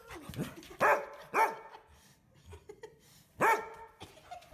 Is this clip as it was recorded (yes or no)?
yes